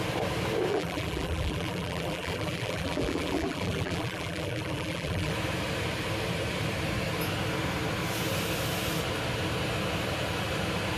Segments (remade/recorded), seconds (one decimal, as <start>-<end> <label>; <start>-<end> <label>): 0.0-0.7 recorded; 0.7-5.3 remade; 5.3-11.0 recorded